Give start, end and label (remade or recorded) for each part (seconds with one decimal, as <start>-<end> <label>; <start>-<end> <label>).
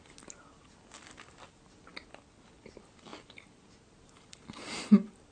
0.0-5.3 recorded